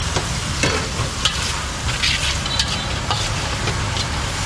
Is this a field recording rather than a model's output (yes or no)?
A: yes